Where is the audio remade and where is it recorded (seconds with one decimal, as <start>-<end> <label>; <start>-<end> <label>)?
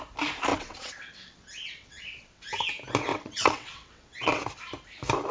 0.0-0.5 recorded; 0.5-2.4 remade; 2.4-3.1 recorded; 3.1-4.4 remade; 4.4-5.3 recorded